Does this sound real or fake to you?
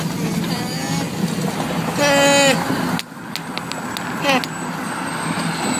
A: real